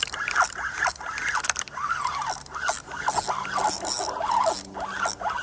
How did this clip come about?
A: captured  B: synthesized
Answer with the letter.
A